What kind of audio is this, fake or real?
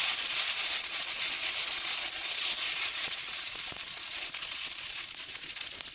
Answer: fake